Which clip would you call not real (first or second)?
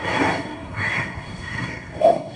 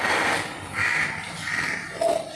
first